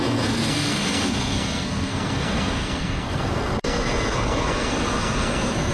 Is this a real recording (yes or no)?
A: no